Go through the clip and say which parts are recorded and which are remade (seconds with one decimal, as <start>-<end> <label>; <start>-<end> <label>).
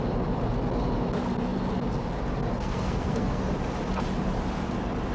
0.0-2.5 recorded; 2.5-3.4 remade; 3.4-5.1 recorded